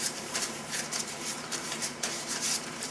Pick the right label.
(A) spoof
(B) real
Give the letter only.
A